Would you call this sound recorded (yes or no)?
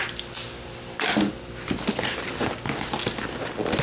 yes